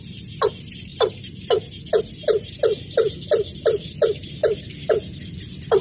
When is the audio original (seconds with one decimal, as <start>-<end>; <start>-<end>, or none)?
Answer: 0.0-5.8